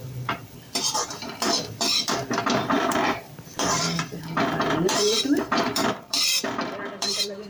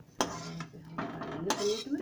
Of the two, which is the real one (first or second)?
second